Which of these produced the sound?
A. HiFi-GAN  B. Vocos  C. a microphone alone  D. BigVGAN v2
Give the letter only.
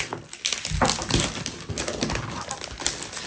C